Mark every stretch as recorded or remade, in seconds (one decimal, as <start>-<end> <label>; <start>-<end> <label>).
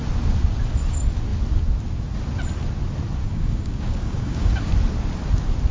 0.0-3.2 recorded; 3.2-4.7 remade; 4.7-5.7 recorded